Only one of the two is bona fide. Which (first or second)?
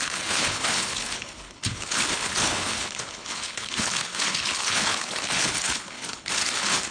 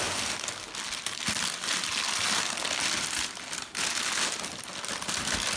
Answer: second